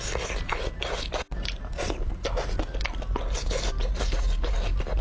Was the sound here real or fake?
real